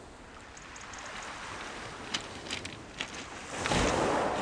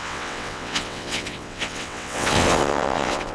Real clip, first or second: first